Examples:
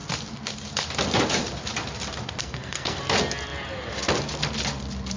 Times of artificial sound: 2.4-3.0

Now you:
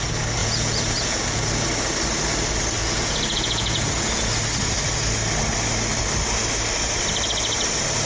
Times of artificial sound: 0.4-1.5; 2.8-4.3

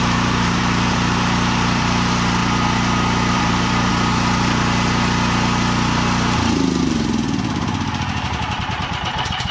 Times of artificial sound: 0.0-2.4; 3.3-3.9; 6.8-9.5

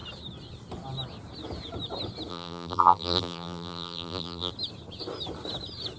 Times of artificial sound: 2.3-4.5